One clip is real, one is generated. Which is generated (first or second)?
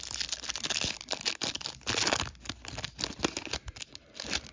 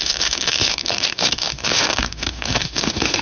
second